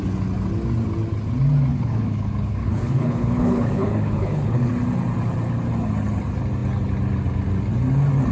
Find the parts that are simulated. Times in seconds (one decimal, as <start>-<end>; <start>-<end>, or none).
1.7-4.7